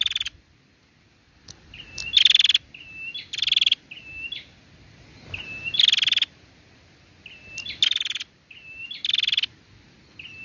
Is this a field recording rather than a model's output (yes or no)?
yes